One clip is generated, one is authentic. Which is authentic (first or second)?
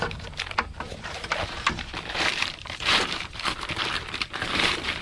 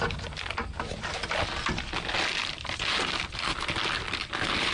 second